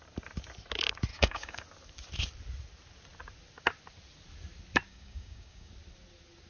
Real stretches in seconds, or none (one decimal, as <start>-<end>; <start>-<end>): 0.0-1.1; 1.6-4.9; 5.7-6.5